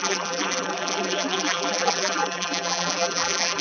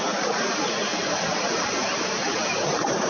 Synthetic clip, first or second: first